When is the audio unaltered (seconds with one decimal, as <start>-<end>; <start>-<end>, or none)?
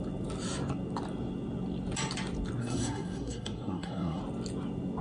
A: 0.0-2.6; 4.2-5.0